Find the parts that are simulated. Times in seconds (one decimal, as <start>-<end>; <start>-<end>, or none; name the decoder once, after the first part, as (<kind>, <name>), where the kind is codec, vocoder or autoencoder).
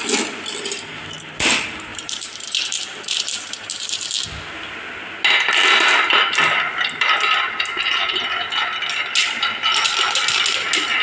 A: 1.9-4.1 (vocoder, BigVGAN v2)